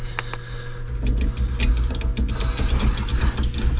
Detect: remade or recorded recorded